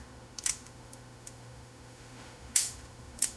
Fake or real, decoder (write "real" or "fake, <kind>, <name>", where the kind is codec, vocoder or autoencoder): fake, autoencoder, DAC-VAE